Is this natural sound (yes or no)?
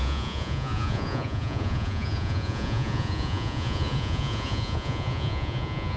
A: no